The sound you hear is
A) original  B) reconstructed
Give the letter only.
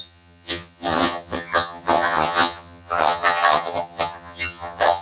B